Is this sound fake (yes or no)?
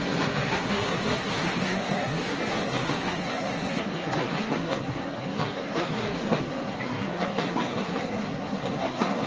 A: yes